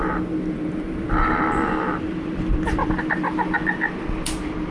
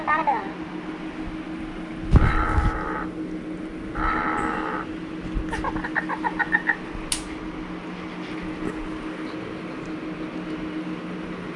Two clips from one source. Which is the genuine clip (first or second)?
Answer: second